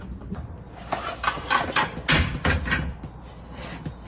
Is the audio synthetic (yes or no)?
no